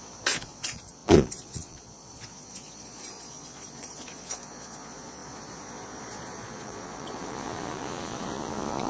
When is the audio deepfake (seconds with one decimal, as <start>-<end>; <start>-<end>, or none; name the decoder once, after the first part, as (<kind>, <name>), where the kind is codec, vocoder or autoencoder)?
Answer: 0.0-8.9 (vocoder, Vocos)